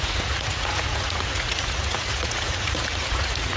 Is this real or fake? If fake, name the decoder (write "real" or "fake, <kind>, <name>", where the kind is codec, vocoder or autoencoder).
fake, vocoder, Vocos